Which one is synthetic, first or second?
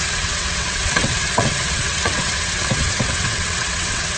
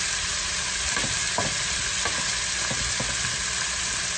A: first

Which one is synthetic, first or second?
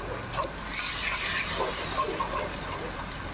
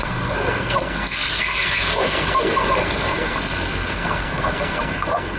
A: second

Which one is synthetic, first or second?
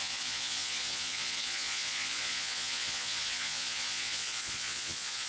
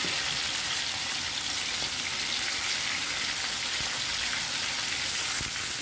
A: first